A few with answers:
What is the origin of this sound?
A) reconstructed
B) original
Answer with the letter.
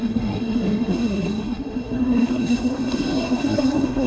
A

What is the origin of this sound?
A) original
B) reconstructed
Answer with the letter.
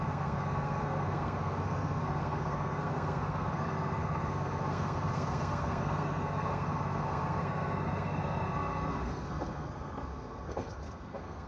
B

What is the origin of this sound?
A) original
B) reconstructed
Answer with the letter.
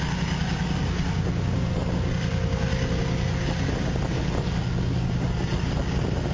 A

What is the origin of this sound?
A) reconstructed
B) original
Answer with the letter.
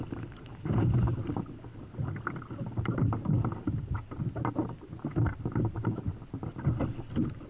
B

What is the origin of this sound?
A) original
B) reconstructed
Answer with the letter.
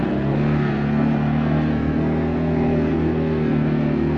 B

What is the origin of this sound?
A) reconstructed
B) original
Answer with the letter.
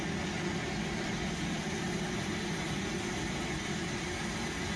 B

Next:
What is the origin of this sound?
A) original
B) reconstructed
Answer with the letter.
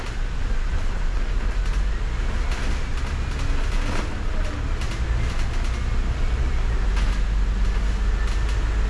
A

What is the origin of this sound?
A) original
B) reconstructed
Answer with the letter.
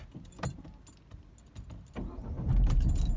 A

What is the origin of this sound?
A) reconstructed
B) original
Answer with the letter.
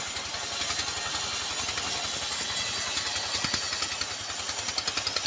B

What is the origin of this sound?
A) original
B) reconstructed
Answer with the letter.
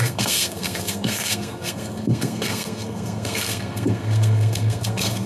B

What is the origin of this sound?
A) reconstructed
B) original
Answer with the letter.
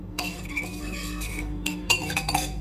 A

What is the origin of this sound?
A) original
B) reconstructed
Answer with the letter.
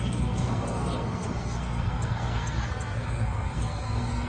B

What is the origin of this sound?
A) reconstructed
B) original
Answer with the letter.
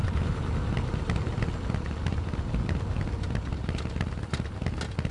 B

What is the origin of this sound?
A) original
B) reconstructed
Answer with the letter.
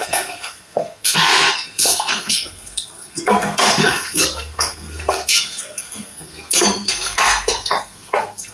B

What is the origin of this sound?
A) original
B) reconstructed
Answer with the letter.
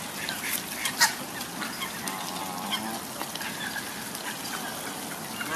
A